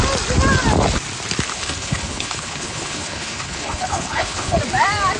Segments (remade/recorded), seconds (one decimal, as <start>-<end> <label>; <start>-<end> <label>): 0.0-1.5 recorded; 1.5-4.6 remade; 4.6-5.2 recorded

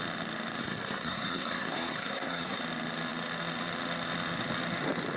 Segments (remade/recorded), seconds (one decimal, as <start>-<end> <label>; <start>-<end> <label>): 0.0-0.6 recorded; 0.6-2.6 remade; 2.6-5.2 recorded

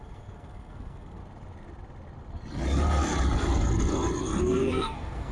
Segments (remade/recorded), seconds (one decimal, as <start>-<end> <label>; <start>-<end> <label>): 0.0-1.2 remade; 1.2-4.4 recorded; 4.4-5.3 remade

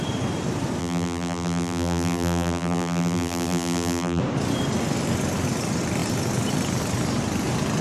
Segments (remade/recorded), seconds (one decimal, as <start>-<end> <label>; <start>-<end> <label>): 0.0-0.8 recorded; 0.8-4.2 remade; 4.2-7.8 recorded

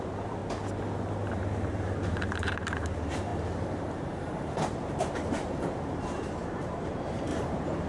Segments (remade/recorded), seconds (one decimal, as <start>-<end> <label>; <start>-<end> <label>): 0.0-0.4 remade; 0.4-1.3 recorded; 1.3-7.9 remade